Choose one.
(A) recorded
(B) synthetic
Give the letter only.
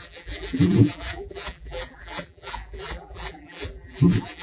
B